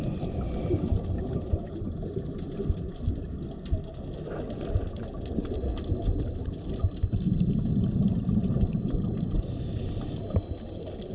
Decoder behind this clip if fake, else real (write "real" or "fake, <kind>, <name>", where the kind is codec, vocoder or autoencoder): real